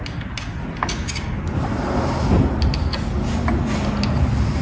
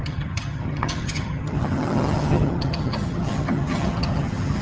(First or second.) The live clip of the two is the first